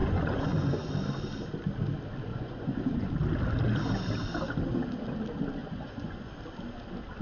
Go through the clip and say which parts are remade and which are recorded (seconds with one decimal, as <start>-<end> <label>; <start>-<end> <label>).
0.0-0.9 remade; 0.9-2.3 recorded; 2.3-3.1 remade; 3.1-5.6 recorded; 5.6-6.3 remade; 6.3-7.2 recorded